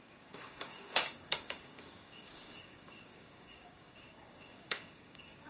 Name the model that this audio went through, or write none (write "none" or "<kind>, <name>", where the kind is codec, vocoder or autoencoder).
codec, DAC